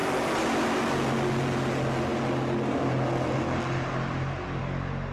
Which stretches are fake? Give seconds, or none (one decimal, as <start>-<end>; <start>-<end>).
none